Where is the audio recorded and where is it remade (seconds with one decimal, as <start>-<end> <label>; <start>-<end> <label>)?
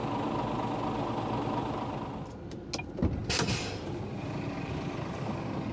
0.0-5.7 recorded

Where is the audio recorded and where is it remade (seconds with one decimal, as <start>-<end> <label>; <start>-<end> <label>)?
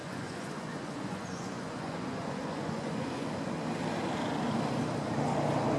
0.0-3.3 remade; 3.3-5.8 recorded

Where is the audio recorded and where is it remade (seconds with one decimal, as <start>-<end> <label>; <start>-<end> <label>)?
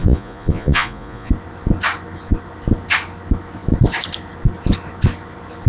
0.0-1.3 remade; 1.3-5.7 recorded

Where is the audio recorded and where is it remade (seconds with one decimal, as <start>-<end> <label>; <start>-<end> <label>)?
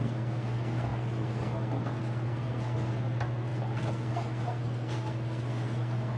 0.0-6.2 remade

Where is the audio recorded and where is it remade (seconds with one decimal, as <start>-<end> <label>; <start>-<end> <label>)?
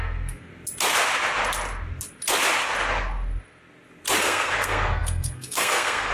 0.0-0.5 remade; 0.5-4.2 recorded; 4.2-6.1 remade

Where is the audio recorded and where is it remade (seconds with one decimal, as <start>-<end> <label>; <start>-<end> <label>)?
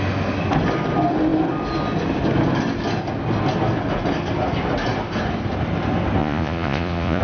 0.0-6.2 recorded; 6.2-7.2 remade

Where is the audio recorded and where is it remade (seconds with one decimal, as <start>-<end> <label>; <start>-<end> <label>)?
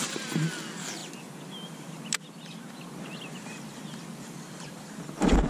0.0-5.5 recorded